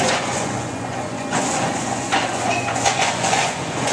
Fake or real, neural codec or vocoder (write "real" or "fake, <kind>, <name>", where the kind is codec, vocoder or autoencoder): fake, vocoder, Vocos